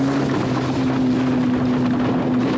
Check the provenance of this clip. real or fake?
real